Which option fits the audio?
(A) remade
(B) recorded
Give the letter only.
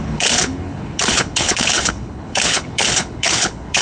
A